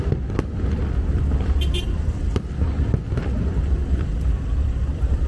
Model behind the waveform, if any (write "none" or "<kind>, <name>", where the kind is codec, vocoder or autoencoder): vocoder, BigVGAN v2